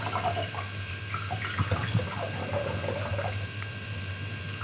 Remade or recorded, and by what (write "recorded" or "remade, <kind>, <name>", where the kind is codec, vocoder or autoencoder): remade, vocoder, BigVGAN v2